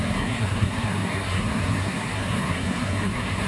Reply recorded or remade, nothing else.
remade